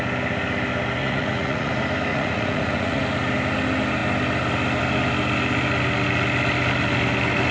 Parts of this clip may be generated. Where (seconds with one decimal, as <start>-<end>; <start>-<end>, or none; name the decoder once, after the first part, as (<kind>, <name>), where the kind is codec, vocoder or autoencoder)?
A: 1.0-1.7 (vocoder, Vocos); 2.1-3.0